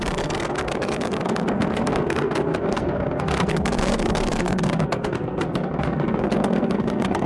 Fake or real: fake